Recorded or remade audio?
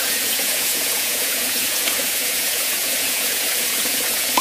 remade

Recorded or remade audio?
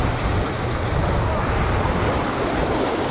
recorded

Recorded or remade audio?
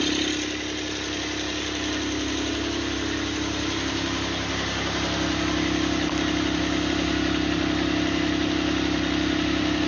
recorded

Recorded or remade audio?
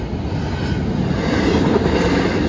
recorded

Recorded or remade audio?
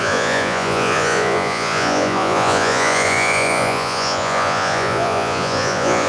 remade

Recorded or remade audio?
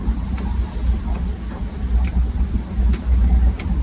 recorded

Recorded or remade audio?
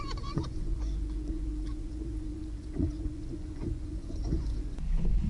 remade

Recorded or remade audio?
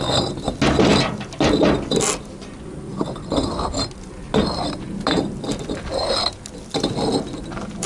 recorded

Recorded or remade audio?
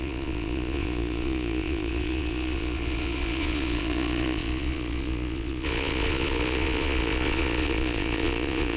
remade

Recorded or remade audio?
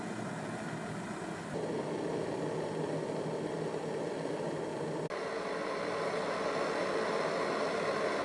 recorded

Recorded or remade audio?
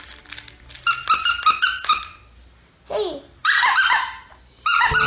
recorded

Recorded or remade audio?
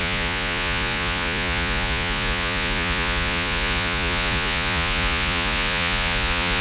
remade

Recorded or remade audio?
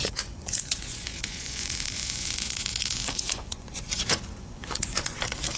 remade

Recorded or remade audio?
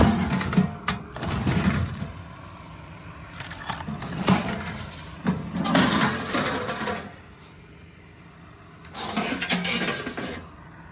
recorded